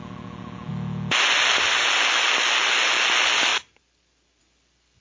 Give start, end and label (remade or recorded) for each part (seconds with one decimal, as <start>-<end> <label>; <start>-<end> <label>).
0.0-5.0 recorded